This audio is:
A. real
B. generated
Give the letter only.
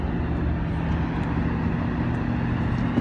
A